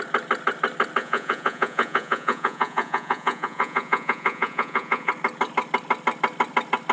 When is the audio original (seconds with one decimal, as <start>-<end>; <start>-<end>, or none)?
0.0-1.0; 5.1-6.9